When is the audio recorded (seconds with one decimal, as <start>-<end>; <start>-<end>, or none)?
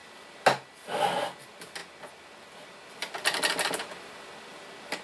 0.0-5.0